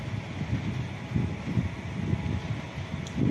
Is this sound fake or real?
real